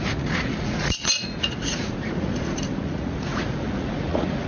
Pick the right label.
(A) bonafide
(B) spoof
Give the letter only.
B